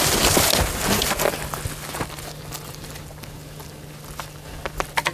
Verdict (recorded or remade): recorded